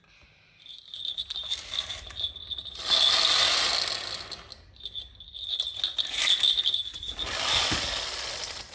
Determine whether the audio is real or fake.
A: real